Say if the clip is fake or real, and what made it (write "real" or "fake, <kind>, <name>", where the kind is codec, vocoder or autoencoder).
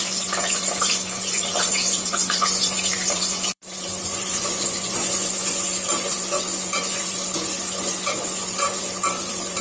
fake, vocoder, Vocos